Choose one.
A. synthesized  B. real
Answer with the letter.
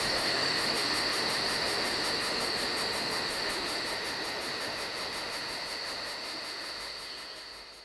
A